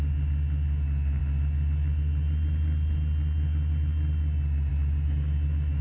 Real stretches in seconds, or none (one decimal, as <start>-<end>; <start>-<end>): 0.0-5.8